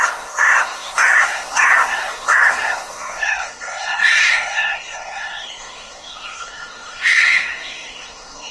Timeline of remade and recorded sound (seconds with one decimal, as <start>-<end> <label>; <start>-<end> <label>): 0.0-8.5 remade